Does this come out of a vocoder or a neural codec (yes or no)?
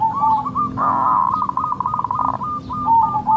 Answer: no